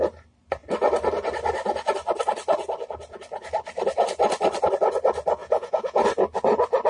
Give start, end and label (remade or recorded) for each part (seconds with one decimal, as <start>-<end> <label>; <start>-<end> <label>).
0.0-5.4 recorded; 5.4-6.0 remade; 6.0-6.9 recorded